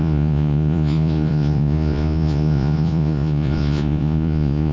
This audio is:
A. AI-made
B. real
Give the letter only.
A